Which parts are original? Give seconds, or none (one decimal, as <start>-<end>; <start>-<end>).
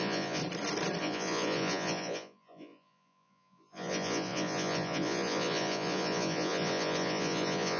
0.4-1.0